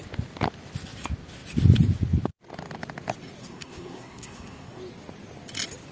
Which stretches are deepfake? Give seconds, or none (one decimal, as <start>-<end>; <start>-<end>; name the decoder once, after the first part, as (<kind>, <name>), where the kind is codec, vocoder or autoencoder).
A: 3.4-4.8 (codec, SNAC)